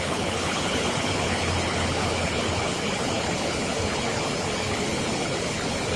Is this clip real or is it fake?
fake